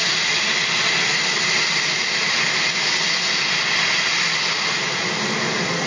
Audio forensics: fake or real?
real